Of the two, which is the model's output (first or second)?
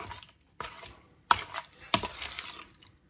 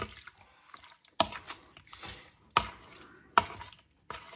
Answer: first